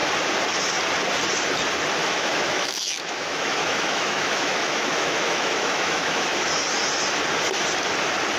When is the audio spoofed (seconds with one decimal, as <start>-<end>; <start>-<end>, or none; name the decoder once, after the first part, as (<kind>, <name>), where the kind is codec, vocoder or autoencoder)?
2.0-6.5 (autoencoder, DAC-VAE)